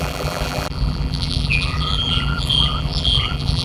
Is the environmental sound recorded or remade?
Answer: remade